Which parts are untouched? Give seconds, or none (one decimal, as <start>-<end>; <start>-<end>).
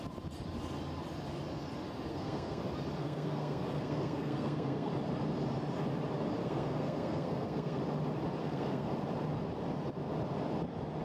0.0-2.1; 2.6-3.0; 4.9-6.4; 7.8-8.4; 8.9-11.0